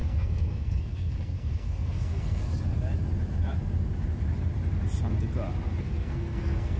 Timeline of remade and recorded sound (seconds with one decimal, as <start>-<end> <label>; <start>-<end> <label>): 0.0-2.4 remade; 2.4-5.8 recorded; 5.8-6.8 remade